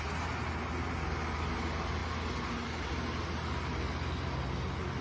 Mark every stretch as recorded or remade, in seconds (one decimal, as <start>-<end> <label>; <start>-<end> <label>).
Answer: 0.0-5.0 recorded